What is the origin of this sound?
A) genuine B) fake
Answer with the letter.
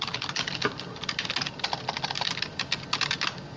A